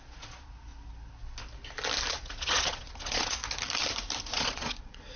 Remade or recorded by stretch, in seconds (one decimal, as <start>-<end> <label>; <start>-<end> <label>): 0.0-0.7 remade; 0.7-2.1 recorded; 2.1-3.4 remade; 3.4-4.2 recorded; 4.2-5.2 remade